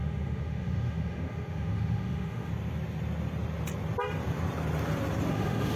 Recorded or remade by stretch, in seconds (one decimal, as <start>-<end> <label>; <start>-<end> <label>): 0.0-2.5 remade; 2.5-5.3 recorded; 5.3-5.8 remade